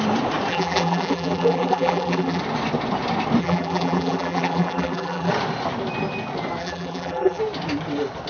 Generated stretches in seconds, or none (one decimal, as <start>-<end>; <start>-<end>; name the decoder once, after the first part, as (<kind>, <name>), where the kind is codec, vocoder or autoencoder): 0.5-2.4 (vocoder, BigVGAN v2); 3.4-5.3; 6.6-7.4